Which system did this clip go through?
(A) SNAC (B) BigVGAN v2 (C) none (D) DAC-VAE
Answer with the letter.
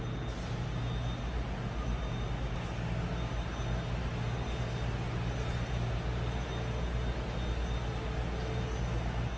C